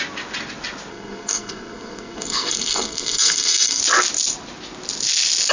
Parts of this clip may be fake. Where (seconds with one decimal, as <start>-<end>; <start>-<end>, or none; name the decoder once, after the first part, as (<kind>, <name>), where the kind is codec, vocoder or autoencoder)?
0.9-3.8 (codec, SNAC)